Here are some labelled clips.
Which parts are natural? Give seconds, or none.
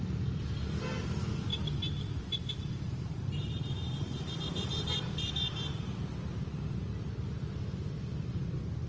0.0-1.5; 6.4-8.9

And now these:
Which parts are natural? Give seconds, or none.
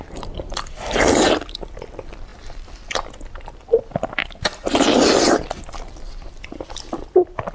0.0-7.5